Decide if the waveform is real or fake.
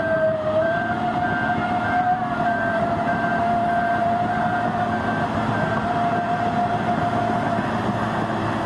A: real